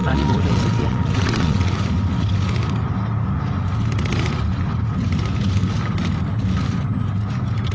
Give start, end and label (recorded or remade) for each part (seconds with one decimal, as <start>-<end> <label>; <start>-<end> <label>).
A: 0.0-1.8 remade; 1.8-7.7 recorded